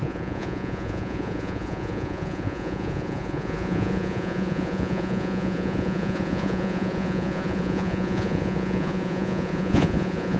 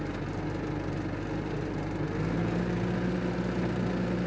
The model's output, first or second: first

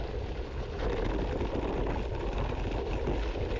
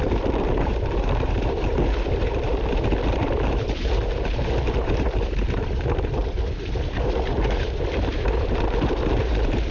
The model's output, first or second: second